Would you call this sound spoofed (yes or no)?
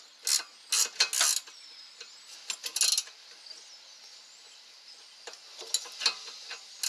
no